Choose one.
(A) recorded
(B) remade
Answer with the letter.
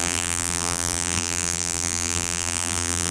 B